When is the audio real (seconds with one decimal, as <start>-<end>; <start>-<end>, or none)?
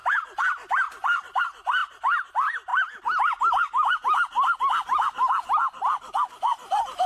0.0-1.8; 2.3-2.7; 4.6-7.1